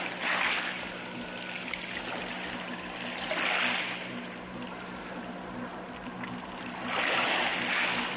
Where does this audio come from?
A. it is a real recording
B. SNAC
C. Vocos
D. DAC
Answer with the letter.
A